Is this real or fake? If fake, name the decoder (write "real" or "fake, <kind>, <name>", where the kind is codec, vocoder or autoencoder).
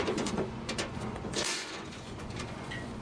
fake, vocoder, Vocos